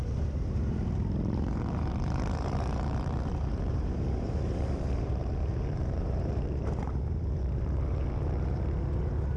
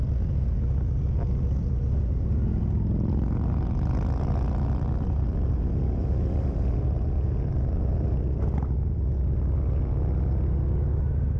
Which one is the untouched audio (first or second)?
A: second